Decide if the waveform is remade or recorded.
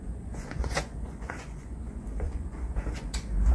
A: remade